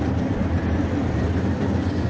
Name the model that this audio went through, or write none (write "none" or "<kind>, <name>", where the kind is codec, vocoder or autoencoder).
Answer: none